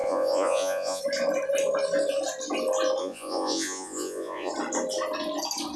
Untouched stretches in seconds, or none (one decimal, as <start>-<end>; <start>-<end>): 1.0-3.0; 4.5-5.8